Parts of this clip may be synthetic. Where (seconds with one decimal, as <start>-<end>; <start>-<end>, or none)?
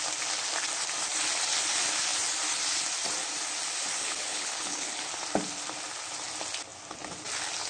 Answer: 4.0-5.0